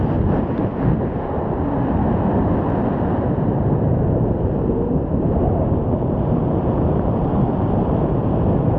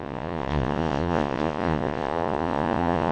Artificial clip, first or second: second